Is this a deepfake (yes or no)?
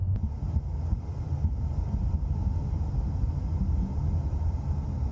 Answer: no